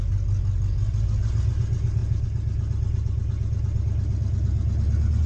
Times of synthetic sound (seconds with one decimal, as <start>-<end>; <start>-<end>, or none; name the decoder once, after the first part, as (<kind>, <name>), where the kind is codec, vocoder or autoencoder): none

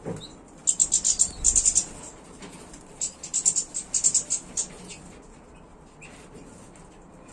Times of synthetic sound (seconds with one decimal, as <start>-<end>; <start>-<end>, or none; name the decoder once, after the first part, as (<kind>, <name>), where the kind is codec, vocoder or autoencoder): none